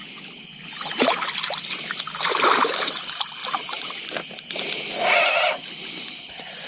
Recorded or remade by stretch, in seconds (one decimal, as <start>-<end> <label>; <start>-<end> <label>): 0.0-3.4 recorded; 3.4-4.9 remade; 4.9-6.7 recorded